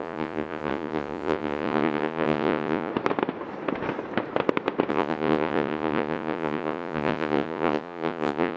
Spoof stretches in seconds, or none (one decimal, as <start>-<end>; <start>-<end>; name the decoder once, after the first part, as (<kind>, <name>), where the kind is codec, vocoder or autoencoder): 0.0-2.9 (vocoder, Vocos); 4.9-8.6